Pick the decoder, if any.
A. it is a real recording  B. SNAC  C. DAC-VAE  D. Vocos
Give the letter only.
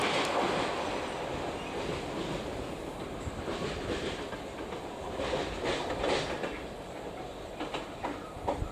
A